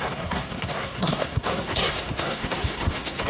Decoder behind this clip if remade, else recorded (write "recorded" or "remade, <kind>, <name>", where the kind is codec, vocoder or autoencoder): remade, codec, SNAC